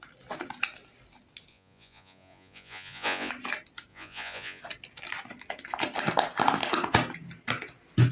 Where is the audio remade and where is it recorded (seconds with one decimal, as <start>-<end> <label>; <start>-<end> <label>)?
0.0-1.5 recorded; 1.5-3.3 remade; 3.3-3.9 recorded; 3.9-4.6 remade; 4.6-8.1 recorded